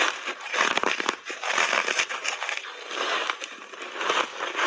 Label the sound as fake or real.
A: real